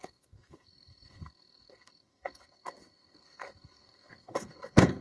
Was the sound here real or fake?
fake